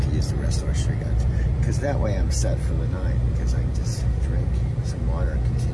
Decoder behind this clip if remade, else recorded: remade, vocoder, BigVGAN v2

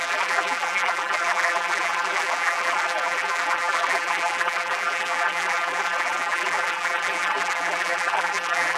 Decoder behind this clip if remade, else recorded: remade, vocoder, BigVGAN v2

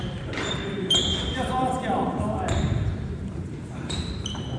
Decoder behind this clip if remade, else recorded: remade, vocoder, BigVGAN v2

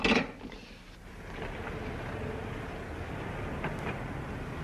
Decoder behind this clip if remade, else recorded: recorded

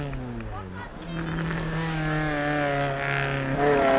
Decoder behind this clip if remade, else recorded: recorded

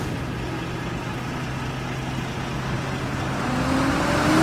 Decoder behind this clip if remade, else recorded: recorded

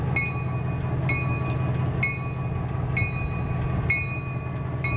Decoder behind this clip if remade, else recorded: recorded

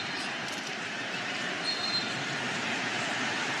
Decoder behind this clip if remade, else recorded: remade, vocoder, BigVGAN v2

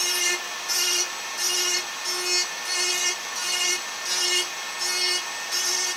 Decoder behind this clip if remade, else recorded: recorded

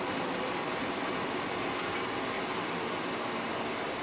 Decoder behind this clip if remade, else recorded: recorded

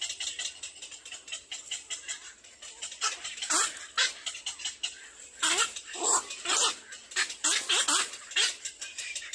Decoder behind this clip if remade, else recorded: recorded